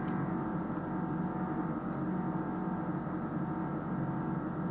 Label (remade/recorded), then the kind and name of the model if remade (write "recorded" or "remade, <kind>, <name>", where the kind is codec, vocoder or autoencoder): recorded